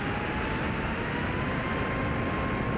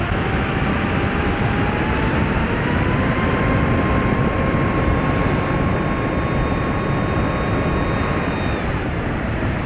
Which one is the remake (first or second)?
second